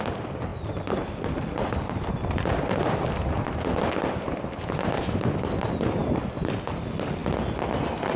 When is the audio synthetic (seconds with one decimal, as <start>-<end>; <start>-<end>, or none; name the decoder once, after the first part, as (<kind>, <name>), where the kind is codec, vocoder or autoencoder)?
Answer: 0.0-6.0 (vocoder, BigVGAN v2); 6.8-7.2